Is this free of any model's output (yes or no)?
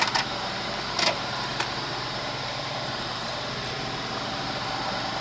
no